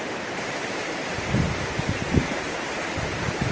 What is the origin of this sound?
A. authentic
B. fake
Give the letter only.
B